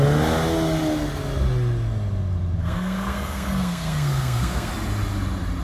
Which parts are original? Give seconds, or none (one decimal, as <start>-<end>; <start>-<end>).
0.0-2.6; 4.7-5.6